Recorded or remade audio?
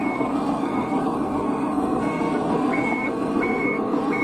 remade